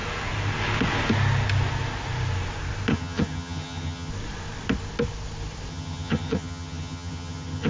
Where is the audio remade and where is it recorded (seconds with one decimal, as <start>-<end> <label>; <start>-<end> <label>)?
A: 0.0-2.9 recorded; 2.9-4.1 remade; 4.1-5.7 recorded; 5.7-7.7 remade